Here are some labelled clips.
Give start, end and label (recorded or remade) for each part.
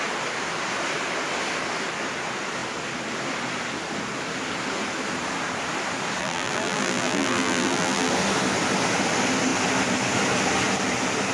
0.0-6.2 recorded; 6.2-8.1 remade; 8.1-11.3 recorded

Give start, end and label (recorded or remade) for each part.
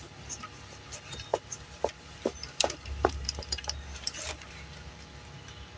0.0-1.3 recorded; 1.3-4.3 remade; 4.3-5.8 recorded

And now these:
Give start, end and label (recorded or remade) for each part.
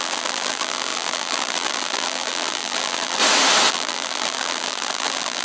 0.0-3.2 remade; 3.2-3.7 recorded; 3.7-5.4 remade